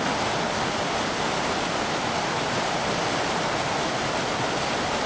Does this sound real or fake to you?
real